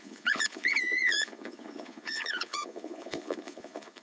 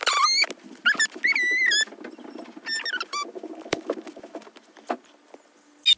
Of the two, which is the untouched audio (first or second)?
second